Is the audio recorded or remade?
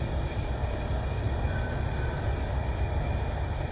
recorded